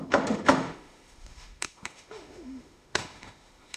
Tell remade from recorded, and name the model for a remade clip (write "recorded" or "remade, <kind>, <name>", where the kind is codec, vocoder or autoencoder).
remade, autoencoder, DAC-VAE